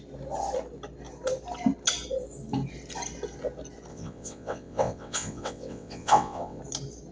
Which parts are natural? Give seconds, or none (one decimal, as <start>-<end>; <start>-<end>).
0.0-3.9; 6.6-7.1